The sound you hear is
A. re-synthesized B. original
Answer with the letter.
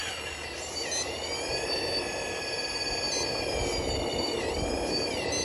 B